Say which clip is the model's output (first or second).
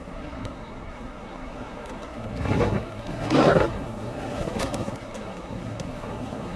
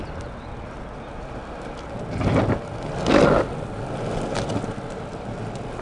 first